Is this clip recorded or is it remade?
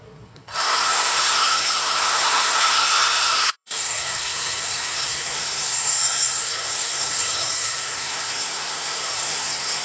remade